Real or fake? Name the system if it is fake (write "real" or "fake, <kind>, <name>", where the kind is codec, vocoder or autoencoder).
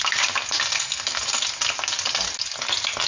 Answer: real